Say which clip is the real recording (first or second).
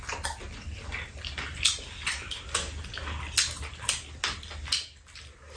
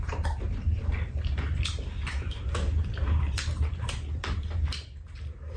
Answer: first